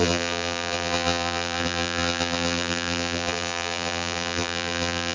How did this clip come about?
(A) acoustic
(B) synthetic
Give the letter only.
B